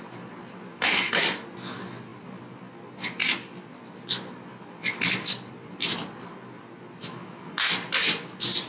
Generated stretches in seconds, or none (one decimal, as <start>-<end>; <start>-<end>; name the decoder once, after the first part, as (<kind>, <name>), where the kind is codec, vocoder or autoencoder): 0.7-1.2 (autoencoder, DAC-VAE); 7.0-7.7